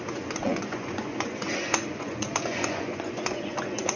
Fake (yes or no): yes